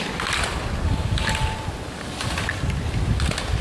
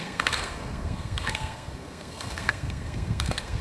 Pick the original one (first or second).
first